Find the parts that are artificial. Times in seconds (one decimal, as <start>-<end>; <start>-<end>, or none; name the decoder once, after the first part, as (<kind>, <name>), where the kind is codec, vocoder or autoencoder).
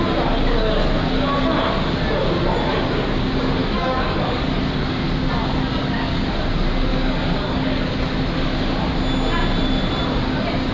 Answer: 3.6-4.6 (codec, DAC); 5.8-6.3; 6.9-7.9